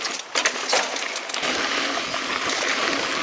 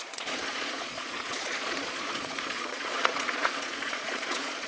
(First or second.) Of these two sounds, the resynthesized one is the second